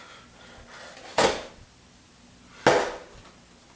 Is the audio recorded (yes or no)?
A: yes